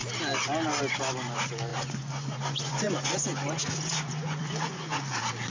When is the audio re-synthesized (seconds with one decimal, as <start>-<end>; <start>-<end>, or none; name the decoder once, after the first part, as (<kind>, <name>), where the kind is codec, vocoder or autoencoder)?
1.7-5.0 (vocoder, Vocos)